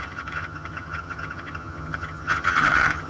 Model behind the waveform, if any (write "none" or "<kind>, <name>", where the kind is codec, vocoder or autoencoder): vocoder, HiFi-GAN